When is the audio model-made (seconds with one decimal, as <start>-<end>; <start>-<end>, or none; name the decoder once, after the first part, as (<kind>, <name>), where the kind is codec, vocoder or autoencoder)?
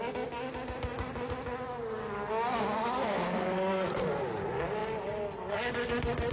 3.0-4.0 (codec, SNAC)